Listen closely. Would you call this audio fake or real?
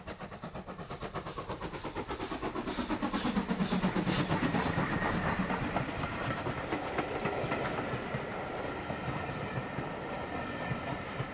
real